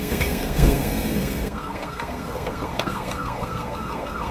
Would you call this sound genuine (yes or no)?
no